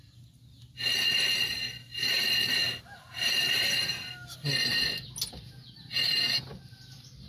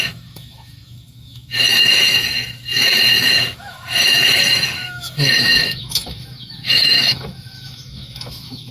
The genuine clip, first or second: first